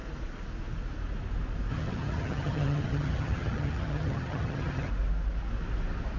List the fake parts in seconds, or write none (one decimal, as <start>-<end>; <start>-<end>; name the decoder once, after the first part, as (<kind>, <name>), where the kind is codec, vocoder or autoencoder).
1.7-4.9 (vocoder, HiFi-GAN)